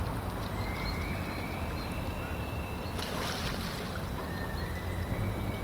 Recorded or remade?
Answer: recorded